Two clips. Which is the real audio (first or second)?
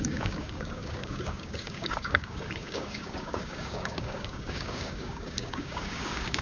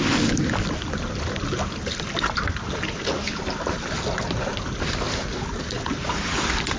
second